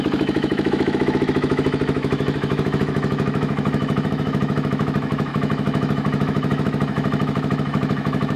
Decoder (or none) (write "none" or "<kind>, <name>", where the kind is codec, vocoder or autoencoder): autoencoder, DAC-VAE